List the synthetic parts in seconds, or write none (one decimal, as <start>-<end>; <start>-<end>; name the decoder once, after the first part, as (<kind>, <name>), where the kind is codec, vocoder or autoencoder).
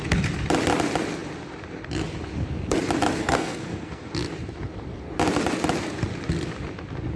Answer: 3.2-4.1 (codec, SNAC)